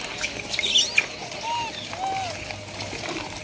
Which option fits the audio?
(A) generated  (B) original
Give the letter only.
B